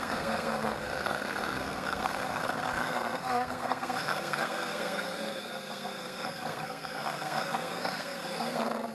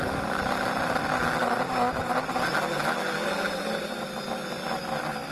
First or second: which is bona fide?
second